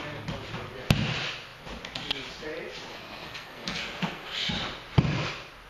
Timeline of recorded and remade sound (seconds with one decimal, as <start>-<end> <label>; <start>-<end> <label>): 0.0-2.9 recorded; 2.9-4.5 remade; 4.5-5.7 recorded